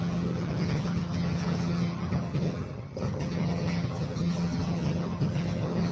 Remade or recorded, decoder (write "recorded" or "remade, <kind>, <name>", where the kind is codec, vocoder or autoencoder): remade, vocoder, HiFi-GAN